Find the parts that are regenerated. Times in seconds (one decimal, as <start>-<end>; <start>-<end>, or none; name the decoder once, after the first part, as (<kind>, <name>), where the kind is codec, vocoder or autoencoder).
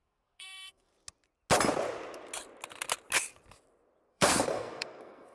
0.0-0.9 (codec, SNAC); 4.1-5.3